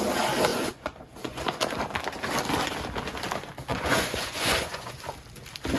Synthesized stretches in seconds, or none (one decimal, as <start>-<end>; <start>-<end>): 0.5-1.4; 3.7-5.0

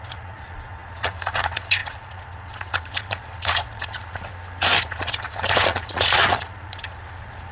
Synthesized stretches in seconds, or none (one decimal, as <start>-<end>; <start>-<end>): 0.0-4.3; 4.8-7.5

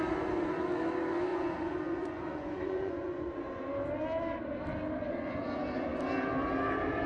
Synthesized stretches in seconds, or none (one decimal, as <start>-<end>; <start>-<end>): 1.3-3.6

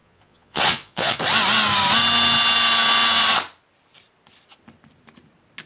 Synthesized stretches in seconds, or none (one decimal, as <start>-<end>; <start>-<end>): 0.0-1.2

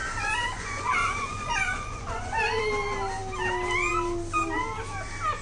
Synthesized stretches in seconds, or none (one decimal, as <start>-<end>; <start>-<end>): 0.0-2.6